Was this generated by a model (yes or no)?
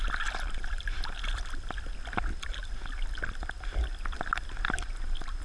no